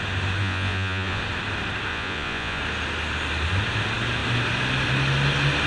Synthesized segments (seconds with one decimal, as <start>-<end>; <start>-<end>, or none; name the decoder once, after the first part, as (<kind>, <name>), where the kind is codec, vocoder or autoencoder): 0.4-1.2 (vocoder, Vocos); 1.9-2.6

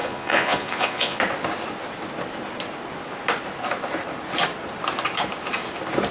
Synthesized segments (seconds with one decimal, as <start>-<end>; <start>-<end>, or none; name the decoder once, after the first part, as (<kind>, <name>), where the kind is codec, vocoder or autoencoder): 0.0-1.2 (vocoder, Vocos)

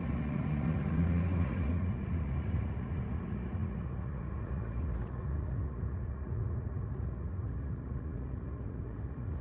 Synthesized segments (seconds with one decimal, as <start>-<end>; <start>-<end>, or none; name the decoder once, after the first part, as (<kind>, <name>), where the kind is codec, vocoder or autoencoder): 0.0-9.4 (vocoder, Vocos)

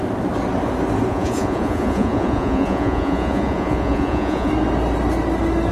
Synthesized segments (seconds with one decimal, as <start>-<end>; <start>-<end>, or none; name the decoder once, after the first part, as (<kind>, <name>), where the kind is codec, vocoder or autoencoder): 1.1-4.5 (vocoder, Vocos)

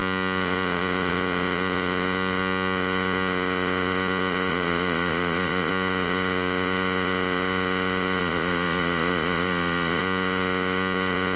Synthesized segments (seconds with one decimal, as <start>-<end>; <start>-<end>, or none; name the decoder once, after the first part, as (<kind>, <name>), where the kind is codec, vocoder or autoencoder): 4.5-5.7 (vocoder, Vocos); 8.2-10.0

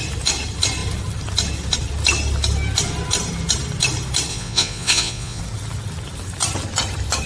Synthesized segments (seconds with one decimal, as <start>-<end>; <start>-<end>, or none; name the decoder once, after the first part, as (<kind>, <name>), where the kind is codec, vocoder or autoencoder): 4.3-5.4 (vocoder, Vocos)

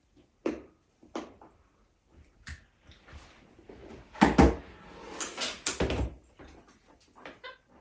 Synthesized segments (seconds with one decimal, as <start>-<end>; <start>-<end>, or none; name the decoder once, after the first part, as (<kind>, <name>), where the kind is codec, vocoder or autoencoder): none